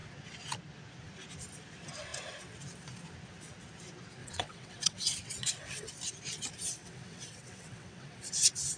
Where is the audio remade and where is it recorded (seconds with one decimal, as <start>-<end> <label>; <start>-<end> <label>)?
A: 0.0-4.2 recorded; 4.2-5.9 remade; 5.9-6.8 recorded; 6.8-8.3 remade; 8.3-8.8 recorded